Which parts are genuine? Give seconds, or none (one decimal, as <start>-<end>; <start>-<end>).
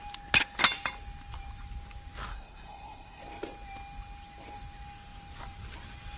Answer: 0.0-2.3; 3.2-6.2